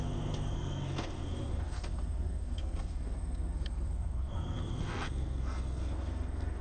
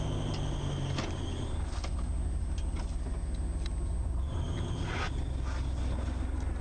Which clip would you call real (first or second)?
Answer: second